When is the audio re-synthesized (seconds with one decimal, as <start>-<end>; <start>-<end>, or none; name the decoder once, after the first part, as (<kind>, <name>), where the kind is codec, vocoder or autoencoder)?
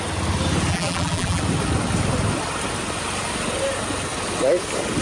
0.7-1.4 (vocoder, BigVGAN v2)